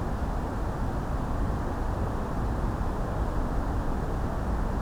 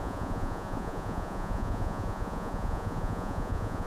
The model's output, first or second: second